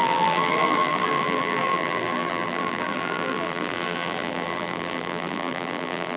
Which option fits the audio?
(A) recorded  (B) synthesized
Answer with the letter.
B